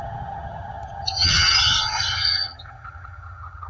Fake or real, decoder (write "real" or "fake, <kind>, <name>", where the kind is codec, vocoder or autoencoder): fake, vocoder, HiFi-GAN